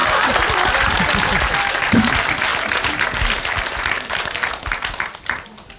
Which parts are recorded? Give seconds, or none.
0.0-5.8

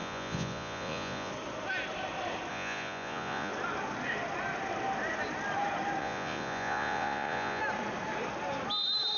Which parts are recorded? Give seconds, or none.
1.3-2.5; 3.5-6.0; 7.6-9.2

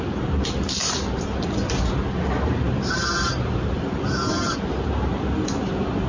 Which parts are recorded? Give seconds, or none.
0.0-6.1